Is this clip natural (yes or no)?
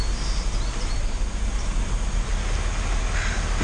yes